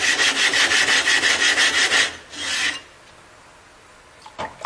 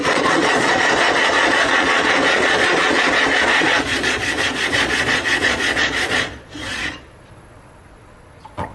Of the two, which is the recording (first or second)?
first